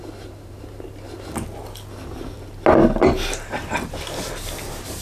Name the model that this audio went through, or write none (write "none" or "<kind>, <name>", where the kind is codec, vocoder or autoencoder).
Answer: none